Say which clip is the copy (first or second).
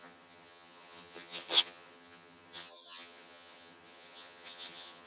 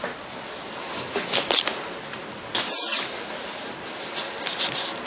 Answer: first